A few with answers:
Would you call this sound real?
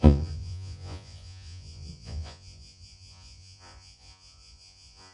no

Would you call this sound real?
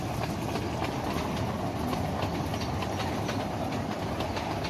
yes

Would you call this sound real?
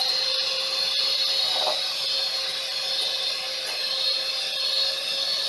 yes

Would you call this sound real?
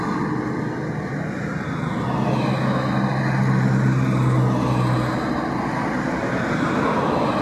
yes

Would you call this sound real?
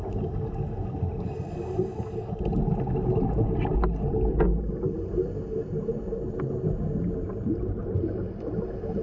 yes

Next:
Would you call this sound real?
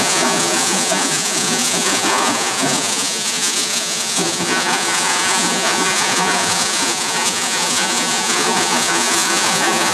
no